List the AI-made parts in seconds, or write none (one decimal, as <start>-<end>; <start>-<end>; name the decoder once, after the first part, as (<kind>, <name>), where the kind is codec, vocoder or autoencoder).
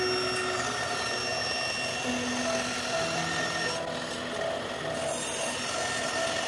none